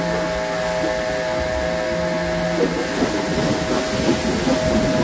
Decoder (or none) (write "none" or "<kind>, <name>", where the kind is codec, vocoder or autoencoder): none